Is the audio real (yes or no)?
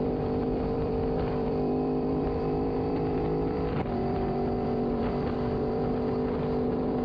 no